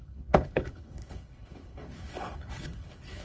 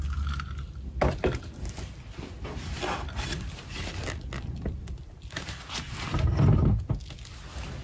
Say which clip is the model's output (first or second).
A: first